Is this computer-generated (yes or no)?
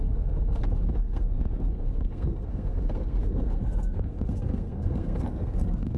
yes